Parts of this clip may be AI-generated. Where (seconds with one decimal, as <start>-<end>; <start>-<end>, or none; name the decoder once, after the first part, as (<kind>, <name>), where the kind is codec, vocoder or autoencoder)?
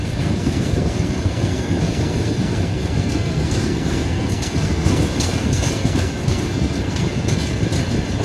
0.0-7.6 (codec, SNAC)